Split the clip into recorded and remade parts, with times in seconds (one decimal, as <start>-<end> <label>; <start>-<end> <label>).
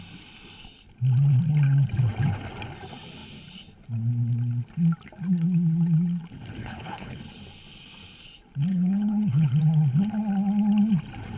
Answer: 0.0-6.6 recorded; 6.6-7.2 remade; 7.2-8.7 recorded; 8.7-9.6 remade; 9.6-11.4 recorded